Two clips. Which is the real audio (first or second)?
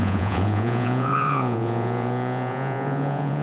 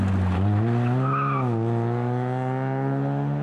second